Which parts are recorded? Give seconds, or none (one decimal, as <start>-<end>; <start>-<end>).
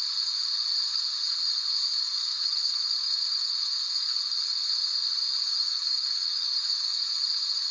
0.0-2.2; 3.7-5.5; 6.5-7.7